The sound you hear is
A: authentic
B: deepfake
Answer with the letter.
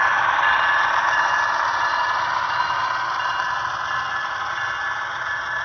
A